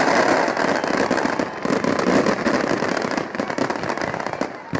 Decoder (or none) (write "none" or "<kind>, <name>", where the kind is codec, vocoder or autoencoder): none